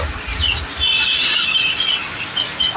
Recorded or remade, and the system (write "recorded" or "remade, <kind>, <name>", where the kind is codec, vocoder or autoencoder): recorded